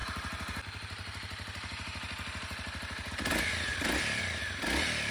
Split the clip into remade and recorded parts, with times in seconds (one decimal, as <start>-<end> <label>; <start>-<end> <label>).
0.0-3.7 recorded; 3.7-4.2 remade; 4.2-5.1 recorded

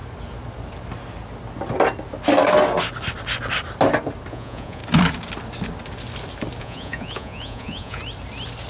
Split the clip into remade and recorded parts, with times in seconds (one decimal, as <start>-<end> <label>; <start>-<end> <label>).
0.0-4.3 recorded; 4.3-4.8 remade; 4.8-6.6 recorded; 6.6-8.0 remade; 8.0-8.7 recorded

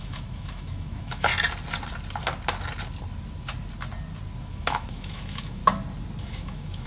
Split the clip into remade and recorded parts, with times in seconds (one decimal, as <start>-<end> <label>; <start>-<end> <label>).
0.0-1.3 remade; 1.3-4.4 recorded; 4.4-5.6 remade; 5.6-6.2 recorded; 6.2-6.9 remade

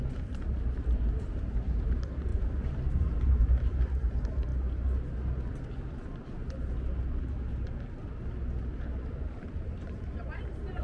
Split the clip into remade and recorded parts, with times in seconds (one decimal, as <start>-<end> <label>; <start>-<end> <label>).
0.0-4.5 remade; 4.5-9.1 recorded; 9.1-10.8 remade

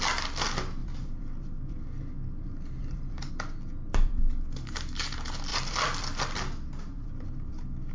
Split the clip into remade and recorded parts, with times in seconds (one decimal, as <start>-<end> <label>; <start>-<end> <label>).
0.0-0.8 recorded; 0.8-3.3 remade; 3.3-5.5 recorded; 5.5-6.2 remade; 6.2-6.9 recorded; 6.9-7.5 remade; 7.5-7.9 recorded